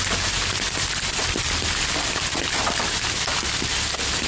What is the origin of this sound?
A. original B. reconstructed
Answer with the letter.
A